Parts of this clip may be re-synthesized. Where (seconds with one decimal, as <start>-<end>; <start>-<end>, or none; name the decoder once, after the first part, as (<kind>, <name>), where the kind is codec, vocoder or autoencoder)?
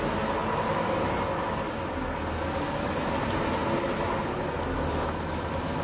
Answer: none